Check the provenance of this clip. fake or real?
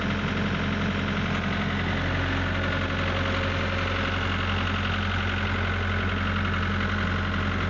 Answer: real